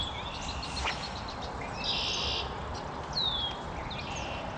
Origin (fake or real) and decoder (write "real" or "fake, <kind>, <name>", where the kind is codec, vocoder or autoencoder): real